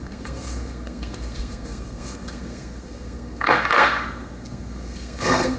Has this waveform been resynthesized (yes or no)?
yes